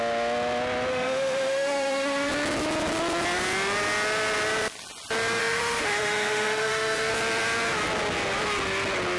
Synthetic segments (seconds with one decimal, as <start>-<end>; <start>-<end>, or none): 0.9-2.3; 5.4-7.1